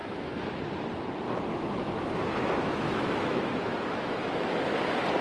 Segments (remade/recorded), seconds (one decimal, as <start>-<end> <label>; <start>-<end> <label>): 0.0-0.6 remade; 0.6-1.5 recorded; 1.5-4.6 remade; 4.6-5.2 recorded